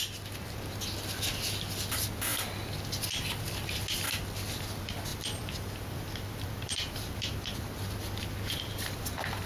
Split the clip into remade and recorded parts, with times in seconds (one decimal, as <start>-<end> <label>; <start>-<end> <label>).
0.0-5.1 recorded; 5.1-8.2 remade; 8.2-9.5 recorded

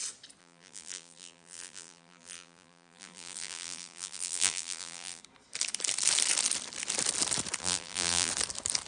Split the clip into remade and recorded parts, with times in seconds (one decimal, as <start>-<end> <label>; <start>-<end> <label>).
0.0-0.4 recorded; 0.4-5.2 remade; 5.2-7.6 recorded; 7.6-8.3 remade; 8.3-8.9 recorded

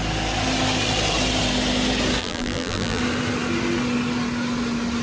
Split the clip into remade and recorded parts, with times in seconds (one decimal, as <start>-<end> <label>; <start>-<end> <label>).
0.0-2.2 recorded; 2.2-3.0 remade; 3.0-5.0 recorded

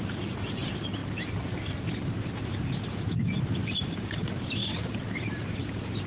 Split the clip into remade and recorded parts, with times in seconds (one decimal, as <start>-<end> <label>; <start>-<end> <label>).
0.0-6.1 remade

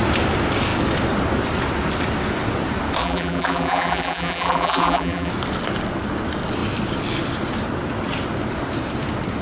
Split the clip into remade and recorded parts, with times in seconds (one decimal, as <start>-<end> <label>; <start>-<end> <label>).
0.0-3.0 recorded; 3.0-5.3 remade; 5.3-9.4 recorded